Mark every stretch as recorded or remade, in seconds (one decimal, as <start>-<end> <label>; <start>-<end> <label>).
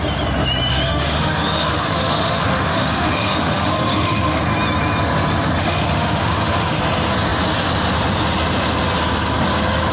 0.0-0.7 recorded; 0.7-4.4 remade; 4.4-5.6 recorded; 5.6-6.8 remade; 6.8-9.9 recorded